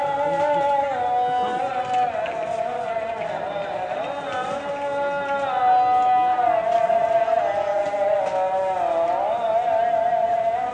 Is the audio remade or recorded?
recorded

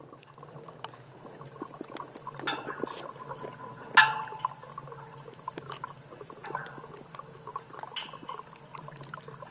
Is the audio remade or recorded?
recorded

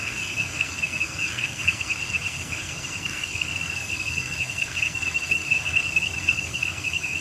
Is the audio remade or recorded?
remade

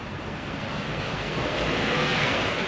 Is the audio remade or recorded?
remade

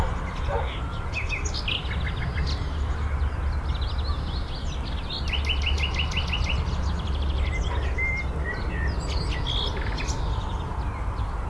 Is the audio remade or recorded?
recorded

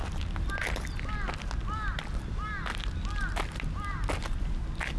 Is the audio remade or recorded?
recorded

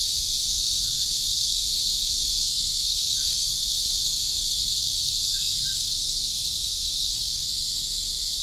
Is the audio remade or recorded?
remade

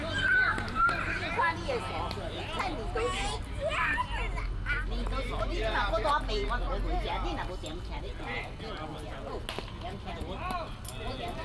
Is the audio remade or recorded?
recorded